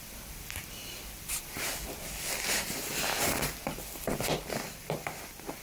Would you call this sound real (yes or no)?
no